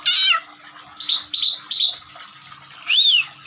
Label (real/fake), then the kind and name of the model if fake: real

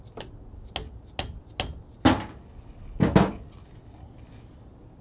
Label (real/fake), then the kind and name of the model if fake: real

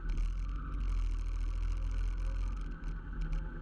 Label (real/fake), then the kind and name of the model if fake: real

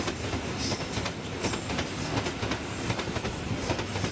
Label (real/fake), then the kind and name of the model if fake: real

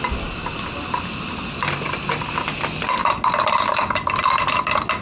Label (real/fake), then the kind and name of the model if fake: real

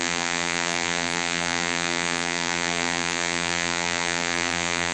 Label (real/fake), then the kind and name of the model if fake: fake, vocoder, BigVGAN v2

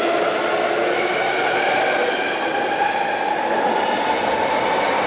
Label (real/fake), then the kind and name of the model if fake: real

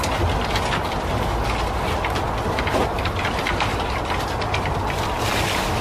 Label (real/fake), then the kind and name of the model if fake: real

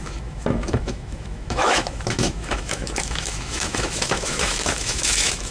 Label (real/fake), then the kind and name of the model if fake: fake, autoencoder, DAC-VAE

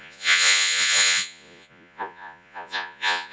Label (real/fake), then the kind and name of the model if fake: fake, vocoder, Vocos